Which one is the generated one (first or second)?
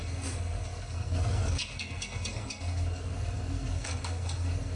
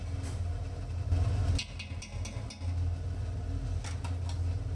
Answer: first